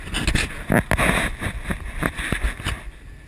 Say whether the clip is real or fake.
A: real